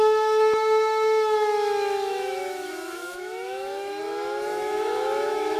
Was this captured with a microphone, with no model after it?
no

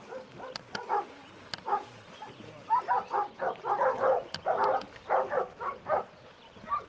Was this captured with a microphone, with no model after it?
yes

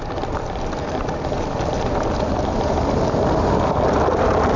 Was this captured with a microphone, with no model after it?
yes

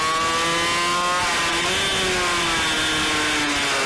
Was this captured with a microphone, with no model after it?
yes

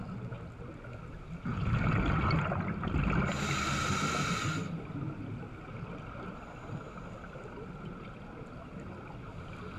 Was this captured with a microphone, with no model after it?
yes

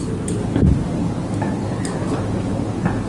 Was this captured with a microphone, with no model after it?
yes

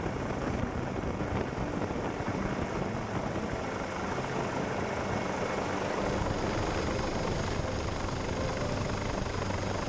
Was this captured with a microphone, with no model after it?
yes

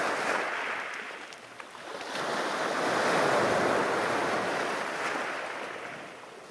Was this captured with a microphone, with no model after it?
yes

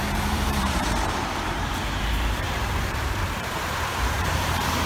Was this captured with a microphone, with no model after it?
no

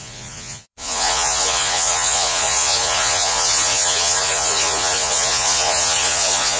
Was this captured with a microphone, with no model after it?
no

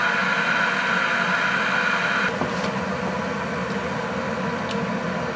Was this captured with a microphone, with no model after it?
yes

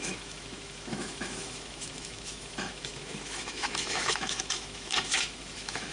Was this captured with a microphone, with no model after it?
no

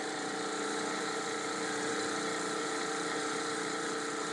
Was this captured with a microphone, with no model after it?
no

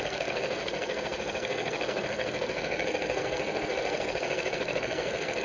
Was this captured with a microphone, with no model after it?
no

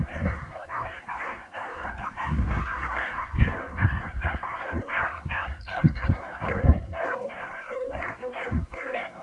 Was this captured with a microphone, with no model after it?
no